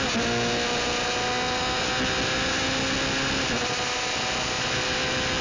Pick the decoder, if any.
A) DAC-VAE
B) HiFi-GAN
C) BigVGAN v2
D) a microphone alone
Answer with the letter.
D